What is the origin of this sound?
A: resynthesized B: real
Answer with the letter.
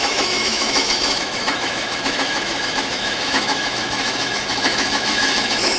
A